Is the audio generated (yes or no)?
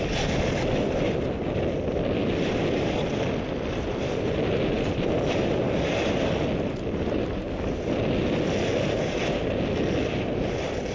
no